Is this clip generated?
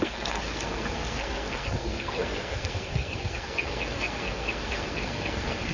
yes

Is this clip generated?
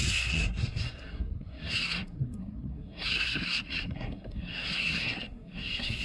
yes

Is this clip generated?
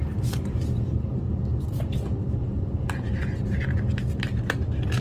no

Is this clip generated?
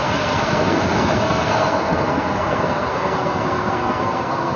yes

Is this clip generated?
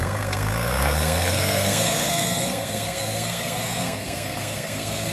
yes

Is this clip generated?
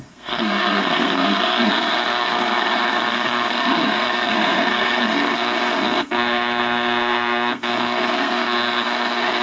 yes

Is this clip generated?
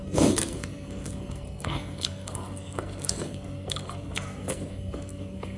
yes